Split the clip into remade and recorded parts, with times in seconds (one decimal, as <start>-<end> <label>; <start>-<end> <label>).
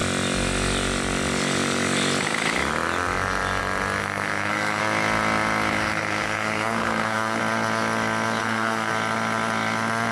0.0-4.0 recorded; 4.0-4.8 remade; 4.8-5.7 recorded; 5.7-7.4 remade; 7.4-8.4 recorded; 8.4-8.9 remade; 8.9-10.1 recorded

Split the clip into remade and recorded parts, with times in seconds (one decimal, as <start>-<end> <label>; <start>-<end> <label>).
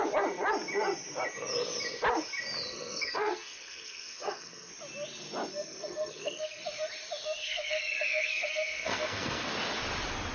0.0-2.7 recorded; 2.7-4.7 remade; 4.7-5.5 recorded; 5.5-6.6 remade; 6.6-7.4 recorded; 7.4-9.5 remade; 9.5-10.3 recorded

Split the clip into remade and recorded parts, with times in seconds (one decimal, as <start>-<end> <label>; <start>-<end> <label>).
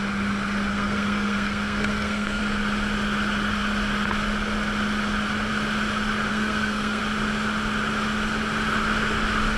0.0-0.7 recorded; 0.7-2.4 remade; 2.4-6.3 recorded; 6.3-7.0 remade; 7.0-9.6 recorded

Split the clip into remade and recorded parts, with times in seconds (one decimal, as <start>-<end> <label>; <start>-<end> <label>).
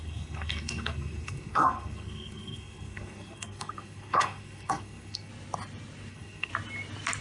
0.0-5.3 remade; 5.3-6.1 recorded; 6.1-6.5 remade; 6.5-7.2 recorded